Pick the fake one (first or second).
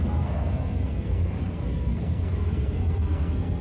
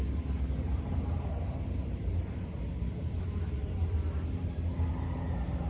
first